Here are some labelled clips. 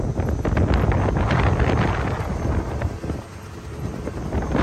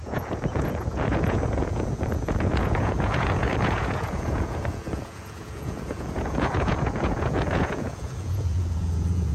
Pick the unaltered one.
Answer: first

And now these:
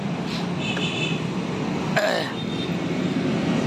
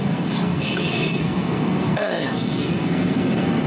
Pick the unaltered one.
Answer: first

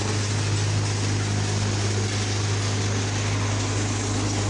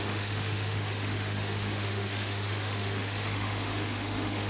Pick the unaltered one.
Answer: first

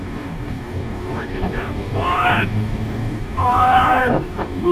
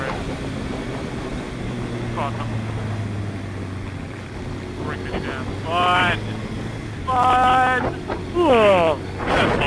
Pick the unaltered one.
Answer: second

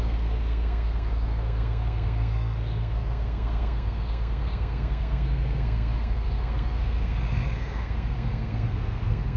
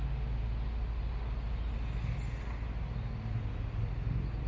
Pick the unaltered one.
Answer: second